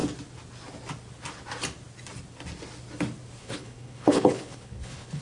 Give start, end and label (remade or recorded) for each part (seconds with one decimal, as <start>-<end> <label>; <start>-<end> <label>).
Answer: 0.0-3.4 recorded; 3.4-5.2 remade